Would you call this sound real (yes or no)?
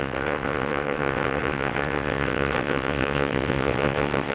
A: no